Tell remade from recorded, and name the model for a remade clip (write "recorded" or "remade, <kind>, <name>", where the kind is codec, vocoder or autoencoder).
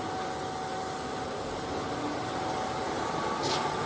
recorded